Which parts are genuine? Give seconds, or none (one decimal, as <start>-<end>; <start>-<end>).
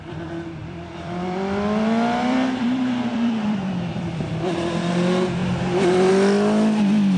0.0-0.6; 4.9-5.4; 6.1-7.2